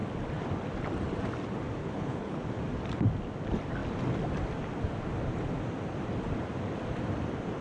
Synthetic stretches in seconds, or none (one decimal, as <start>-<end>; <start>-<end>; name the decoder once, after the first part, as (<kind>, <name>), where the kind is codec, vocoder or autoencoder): 1.8-2.4 (codec, HILCodec)